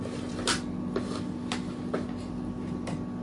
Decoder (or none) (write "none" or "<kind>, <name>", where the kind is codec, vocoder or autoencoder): none